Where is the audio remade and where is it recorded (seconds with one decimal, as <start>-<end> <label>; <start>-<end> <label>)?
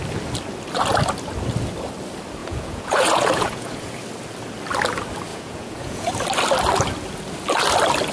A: 0.0-2.4 recorded; 2.4-3.9 remade; 3.9-5.3 recorded; 5.3-6.1 remade; 6.1-8.1 recorded